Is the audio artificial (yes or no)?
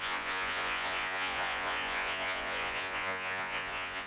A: yes